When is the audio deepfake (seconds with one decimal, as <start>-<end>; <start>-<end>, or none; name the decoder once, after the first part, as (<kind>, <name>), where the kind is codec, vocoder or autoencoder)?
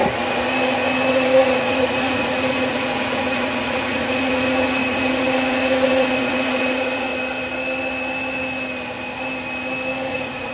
1.1-7.1 (vocoder, Vocos); 10.1-10.5